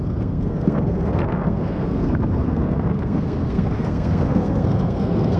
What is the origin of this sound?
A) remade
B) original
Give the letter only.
A